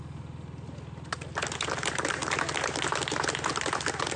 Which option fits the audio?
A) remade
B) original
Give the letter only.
B